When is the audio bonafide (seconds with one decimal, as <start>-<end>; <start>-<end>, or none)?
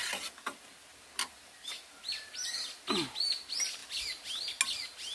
0.0-5.1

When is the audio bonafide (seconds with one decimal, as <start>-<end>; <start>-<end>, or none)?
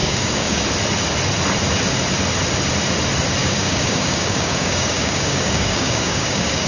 0.6-3.4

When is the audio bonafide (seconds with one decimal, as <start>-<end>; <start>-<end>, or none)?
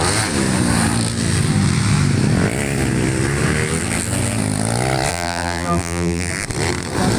0.0-5.1; 6.3-7.2